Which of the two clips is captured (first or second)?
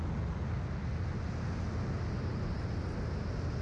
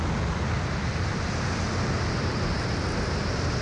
first